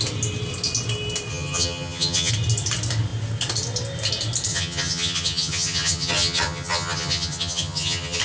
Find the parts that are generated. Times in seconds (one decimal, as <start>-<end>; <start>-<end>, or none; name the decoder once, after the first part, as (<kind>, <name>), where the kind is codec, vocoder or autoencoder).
1.3-2.3 (vocoder, HiFi-GAN); 4.5-8.2